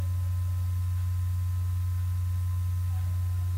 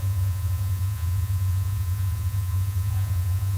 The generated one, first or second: second